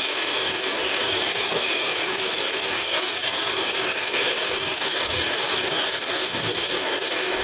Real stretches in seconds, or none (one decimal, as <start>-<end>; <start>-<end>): none